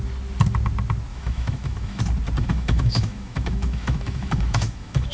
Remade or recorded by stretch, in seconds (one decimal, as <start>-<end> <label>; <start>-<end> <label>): 0.0-1.1 recorded; 1.1-2.0 remade; 2.0-2.4 recorded; 2.4-5.1 remade